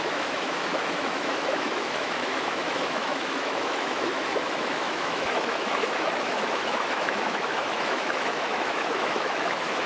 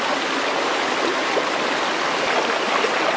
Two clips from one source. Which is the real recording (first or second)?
second